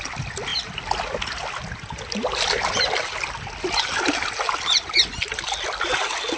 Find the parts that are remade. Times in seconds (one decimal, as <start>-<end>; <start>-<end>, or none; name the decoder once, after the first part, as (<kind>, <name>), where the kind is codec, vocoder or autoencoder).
none